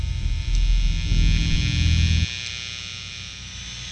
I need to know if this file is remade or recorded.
recorded